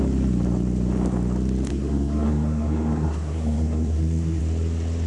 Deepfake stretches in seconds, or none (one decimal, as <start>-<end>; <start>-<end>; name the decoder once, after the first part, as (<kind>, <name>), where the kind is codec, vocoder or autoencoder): 1.7-4.4 (codec, SNAC)